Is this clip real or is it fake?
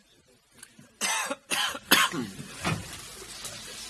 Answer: real